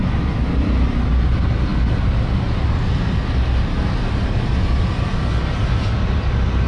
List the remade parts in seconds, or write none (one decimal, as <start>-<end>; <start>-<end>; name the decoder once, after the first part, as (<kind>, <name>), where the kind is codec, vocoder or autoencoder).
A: none